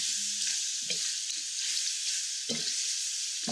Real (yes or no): yes